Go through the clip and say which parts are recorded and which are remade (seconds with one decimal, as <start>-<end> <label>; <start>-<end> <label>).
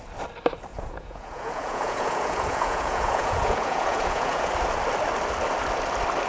0.0-0.7 recorded; 0.7-4.5 remade; 4.5-6.3 recorded